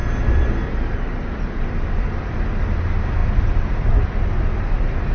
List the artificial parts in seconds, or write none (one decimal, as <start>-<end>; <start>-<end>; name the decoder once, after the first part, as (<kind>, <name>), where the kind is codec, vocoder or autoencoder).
none